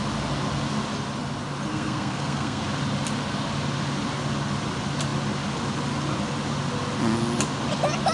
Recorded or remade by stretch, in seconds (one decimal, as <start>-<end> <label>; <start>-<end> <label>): 0.0-1.7 recorded; 1.7-2.6 remade; 2.6-8.1 recorded

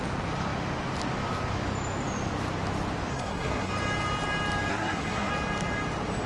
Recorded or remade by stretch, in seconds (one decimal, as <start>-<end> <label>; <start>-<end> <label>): 0.0-3.1 recorded; 3.1-3.7 remade; 3.7-4.7 recorded; 4.7-5.3 remade; 5.3-6.3 recorded

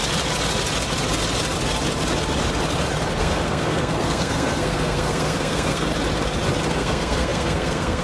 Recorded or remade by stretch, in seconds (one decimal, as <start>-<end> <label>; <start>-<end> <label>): 0.0-3.2 recorded; 3.2-5.9 remade; 5.9-6.7 recorded; 6.7-8.0 remade

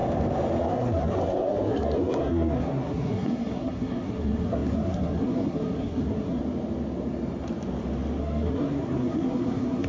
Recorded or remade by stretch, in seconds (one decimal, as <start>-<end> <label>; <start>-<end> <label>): 0.0-0.6 recorded; 0.6-6.4 remade; 6.4-8.2 recorded; 8.2-9.9 remade